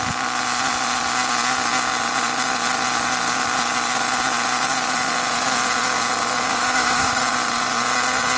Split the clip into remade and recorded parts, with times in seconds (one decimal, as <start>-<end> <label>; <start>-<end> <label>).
0.0-6.5 recorded; 6.5-7.2 remade; 7.2-8.4 recorded